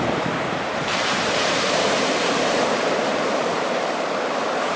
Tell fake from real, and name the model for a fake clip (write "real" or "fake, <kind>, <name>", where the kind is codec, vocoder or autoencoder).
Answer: fake, vocoder, BigVGAN v2